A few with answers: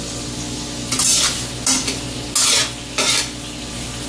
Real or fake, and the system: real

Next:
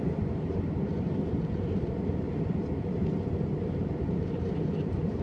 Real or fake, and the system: fake, vocoder, BigVGAN v2